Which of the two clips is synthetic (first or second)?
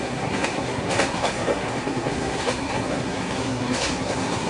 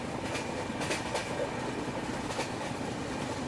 first